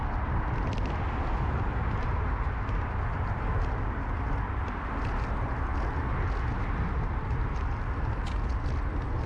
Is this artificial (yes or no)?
no